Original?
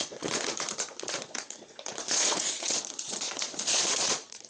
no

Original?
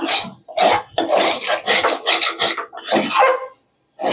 yes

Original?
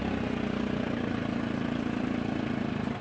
yes